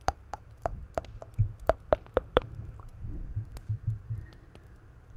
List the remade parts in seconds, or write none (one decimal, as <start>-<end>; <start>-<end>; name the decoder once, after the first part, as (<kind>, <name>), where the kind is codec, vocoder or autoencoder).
0.0-0.8 (vocoder, BigVGAN v2); 2.3-5.2